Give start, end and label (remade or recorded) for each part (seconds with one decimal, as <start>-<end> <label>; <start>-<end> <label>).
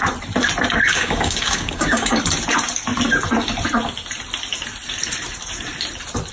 0.0-0.9 recorded; 0.9-2.2 remade; 2.2-6.3 recorded